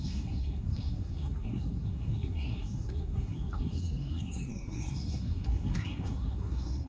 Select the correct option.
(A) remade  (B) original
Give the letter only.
A